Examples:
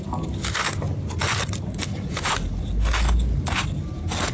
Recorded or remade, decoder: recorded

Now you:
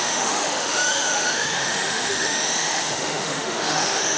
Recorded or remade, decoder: remade, autoencoder, DAC-VAE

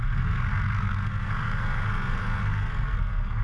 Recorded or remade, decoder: remade, codec, SNAC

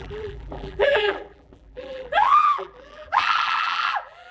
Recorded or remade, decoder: remade, vocoder, BigVGAN v2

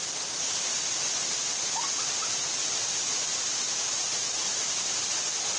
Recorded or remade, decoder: recorded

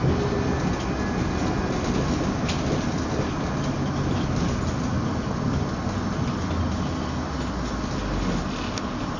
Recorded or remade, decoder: recorded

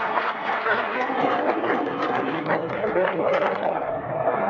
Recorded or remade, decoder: remade, codec, SNAC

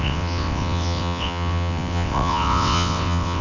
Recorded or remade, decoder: remade, vocoder, WaveNeXt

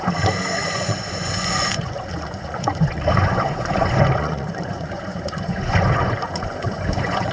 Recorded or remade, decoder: remade, vocoder, Vocos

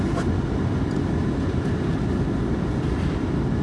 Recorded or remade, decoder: recorded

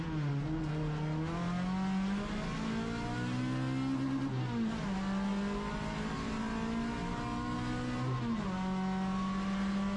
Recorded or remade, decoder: recorded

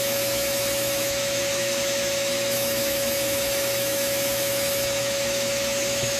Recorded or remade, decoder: remade, autoencoder, DAC-VAE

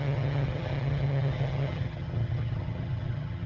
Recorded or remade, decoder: remade, vocoder, HiFi-GAN